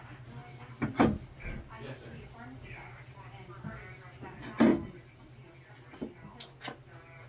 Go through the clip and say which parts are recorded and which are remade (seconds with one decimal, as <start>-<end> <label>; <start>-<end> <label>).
0.0-7.3 recorded